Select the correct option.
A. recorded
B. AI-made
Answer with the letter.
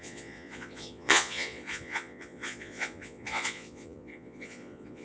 B